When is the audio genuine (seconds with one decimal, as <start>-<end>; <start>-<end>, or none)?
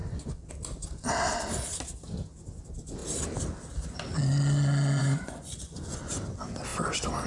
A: 0.5-5.0; 6.1-7.3